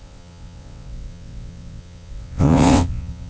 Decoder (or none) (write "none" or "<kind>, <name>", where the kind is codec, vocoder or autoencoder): vocoder, WaveNeXt